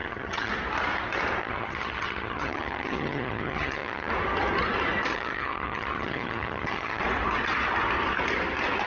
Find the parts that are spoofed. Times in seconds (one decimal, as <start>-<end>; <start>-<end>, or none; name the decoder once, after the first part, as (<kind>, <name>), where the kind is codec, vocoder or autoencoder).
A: 0.0-0.5 (vocoder, HiFi-GAN); 1.4-4.1; 5.1-7.0